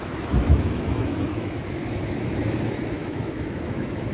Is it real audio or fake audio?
fake